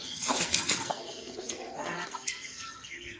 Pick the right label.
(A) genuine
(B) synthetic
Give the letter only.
B